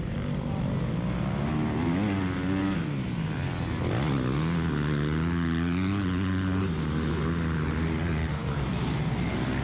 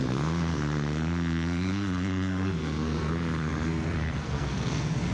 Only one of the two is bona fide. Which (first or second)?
first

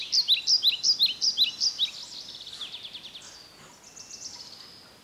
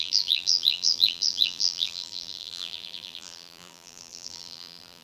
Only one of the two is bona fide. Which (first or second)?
first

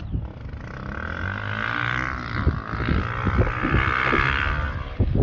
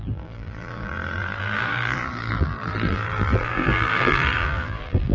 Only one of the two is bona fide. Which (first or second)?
first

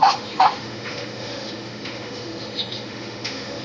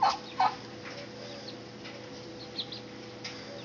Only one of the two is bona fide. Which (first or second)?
second